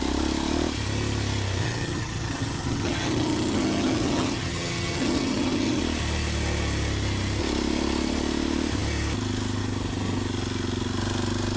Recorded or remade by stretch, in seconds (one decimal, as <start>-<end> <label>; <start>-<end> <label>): 0.0-1.6 recorded; 1.6-5.8 remade; 5.8-11.6 recorded